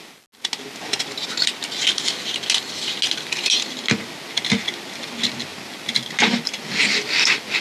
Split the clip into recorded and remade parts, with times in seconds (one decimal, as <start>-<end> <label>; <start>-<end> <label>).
0.0-7.6 recorded